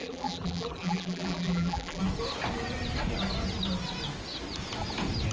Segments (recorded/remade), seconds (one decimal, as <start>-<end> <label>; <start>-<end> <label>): 0.0-2.0 remade; 2.0-5.3 recorded